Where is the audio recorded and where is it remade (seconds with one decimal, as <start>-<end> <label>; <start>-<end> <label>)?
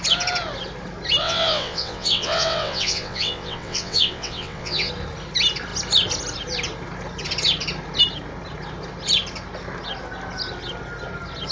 0.0-1.2 recorded; 1.2-4.9 remade; 4.9-11.5 recorded